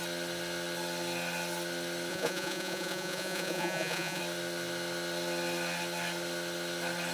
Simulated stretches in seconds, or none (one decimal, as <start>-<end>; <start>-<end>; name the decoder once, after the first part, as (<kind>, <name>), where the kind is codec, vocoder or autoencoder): 2.1-4.2 (vocoder, Vocos)